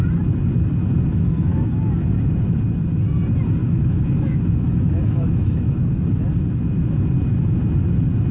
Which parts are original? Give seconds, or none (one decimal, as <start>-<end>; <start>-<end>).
0.0-1.1; 1.7-3.6; 5.8-8.3